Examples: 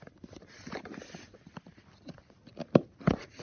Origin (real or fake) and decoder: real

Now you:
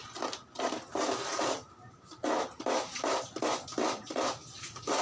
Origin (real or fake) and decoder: real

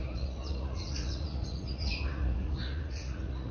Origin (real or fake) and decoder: fake, vocoder, Vocos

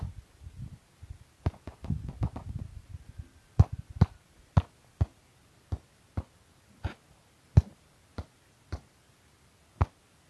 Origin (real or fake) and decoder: real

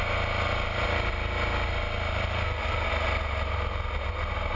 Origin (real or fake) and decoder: real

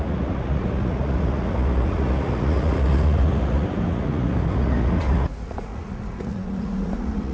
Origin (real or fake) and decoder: fake, vocoder, Vocos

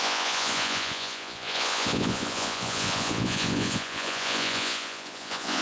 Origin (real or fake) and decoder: fake, vocoder, Vocos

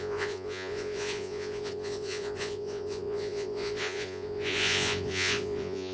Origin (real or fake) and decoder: fake, vocoder, Vocos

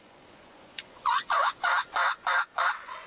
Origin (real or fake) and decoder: fake, vocoder, Vocos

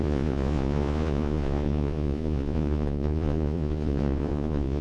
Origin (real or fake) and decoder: fake, vocoder, Vocos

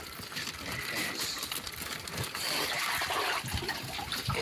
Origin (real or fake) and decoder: real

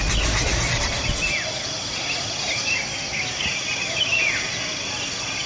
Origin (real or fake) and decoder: real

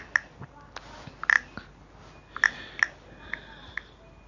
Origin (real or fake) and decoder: real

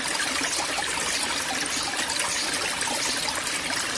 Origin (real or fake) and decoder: real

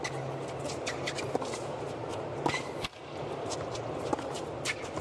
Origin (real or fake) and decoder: real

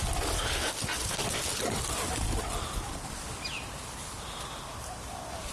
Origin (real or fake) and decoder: real